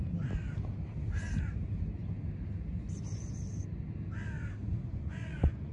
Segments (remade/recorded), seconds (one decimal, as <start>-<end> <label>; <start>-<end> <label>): 0.0-4.6 recorded; 4.6-5.7 remade